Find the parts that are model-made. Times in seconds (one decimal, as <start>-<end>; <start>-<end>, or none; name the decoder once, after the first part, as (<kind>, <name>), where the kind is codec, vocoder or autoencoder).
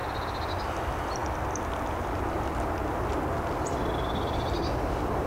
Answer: none